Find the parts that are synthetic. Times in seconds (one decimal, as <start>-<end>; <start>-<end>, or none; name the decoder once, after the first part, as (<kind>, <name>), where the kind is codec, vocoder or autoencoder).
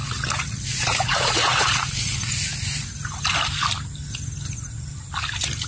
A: 0.0-2.3 (vocoder, Vocos)